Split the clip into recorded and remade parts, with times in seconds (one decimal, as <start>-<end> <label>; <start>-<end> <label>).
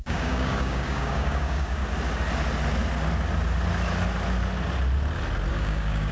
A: 0.0-1.8 remade; 1.8-5.5 recorded; 5.5-6.1 remade